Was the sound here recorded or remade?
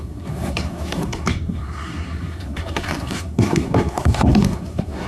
remade